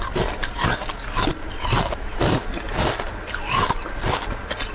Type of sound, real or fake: real